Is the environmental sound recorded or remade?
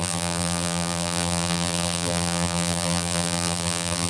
remade